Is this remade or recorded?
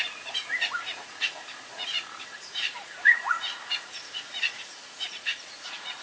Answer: remade